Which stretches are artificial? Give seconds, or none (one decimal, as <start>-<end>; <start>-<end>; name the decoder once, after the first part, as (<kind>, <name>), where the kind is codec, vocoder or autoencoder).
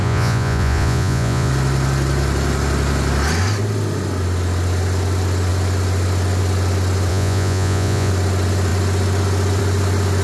0.0-1.5 (vocoder, Vocos); 7.1-8.1